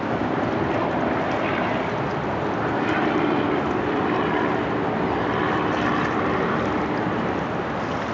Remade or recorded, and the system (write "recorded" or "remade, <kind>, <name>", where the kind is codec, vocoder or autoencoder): recorded